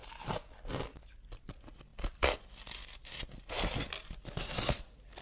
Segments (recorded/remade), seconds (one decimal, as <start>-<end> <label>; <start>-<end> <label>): 0.0-5.2 recorded